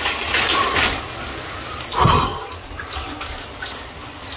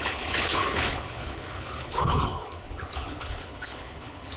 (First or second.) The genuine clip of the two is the first